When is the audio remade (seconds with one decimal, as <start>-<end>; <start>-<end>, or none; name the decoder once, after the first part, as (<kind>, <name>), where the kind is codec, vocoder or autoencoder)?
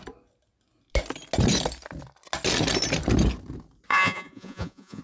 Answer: 3.9-5.0 (vocoder, Vocos)